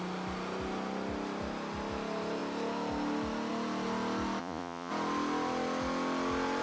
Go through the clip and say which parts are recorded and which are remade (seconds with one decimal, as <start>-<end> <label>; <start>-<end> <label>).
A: 0.0-4.4 recorded; 4.4-4.9 remade; 4.9-6.6 recorded